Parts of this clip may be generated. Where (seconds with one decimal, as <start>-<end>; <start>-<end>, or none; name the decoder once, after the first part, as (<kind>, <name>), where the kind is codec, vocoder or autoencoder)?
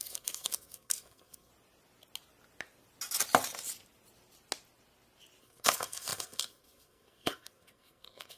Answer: 0.0-1.5 (codec, SNAC); 5.4-8.4